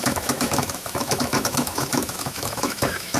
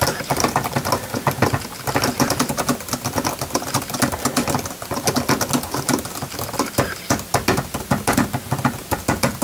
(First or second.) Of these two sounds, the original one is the second